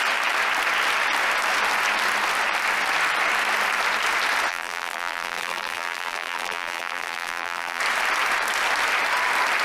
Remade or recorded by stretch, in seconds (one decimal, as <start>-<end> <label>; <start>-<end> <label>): 0.0-4.5 recorded; 4.5-7.8 remade; 7.8-9.6 recorded